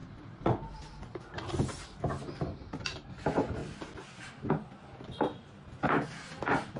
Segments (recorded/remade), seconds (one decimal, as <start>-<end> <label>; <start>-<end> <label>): 0.0-6.8 recorded